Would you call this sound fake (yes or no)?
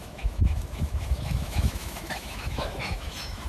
yes